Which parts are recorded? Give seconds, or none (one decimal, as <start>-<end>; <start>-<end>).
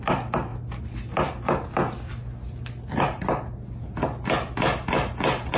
0.0-5.6